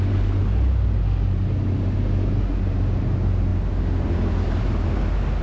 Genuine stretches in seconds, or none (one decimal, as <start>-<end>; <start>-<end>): 0.0-5.4